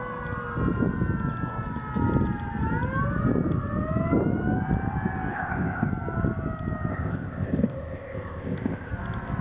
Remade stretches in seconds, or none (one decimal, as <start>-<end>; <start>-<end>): 5.3-5.9; 6.9-8.9